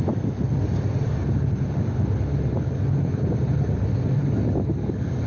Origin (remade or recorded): recorded